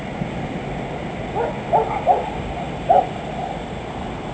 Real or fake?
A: real